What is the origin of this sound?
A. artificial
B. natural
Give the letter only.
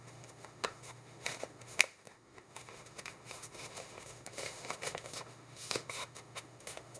A